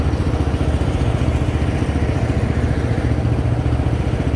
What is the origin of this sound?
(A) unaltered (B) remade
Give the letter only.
A